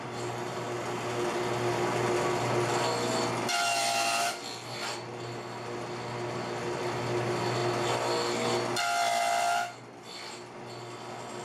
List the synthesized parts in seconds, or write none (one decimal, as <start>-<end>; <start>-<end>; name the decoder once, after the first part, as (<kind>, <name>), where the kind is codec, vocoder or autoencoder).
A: none